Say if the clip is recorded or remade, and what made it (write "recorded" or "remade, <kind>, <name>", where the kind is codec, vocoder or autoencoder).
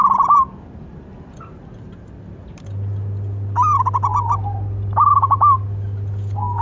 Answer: recorded